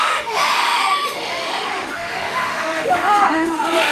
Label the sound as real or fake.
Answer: fake